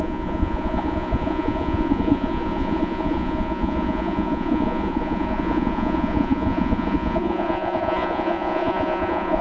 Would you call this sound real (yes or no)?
no